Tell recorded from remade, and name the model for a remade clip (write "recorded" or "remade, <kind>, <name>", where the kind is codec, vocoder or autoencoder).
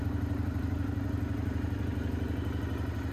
recorded